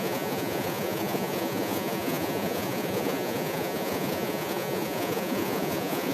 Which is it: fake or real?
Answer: fake